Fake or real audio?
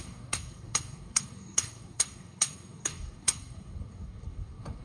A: fake